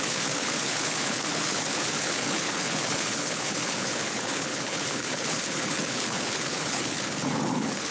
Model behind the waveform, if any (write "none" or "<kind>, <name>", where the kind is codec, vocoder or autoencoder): codec, HILCodec